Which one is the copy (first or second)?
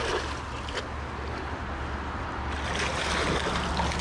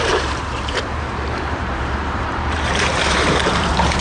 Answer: second